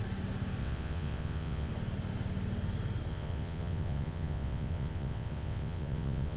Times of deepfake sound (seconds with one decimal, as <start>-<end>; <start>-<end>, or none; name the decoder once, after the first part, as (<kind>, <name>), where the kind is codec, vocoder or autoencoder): 0.6-1.7 (vocoder, WaveNeXt); 3.1-6.4